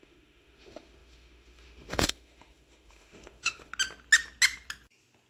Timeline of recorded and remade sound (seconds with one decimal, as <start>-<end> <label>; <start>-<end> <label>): 0.0-3.7 remade; 3.7-5.3 recorded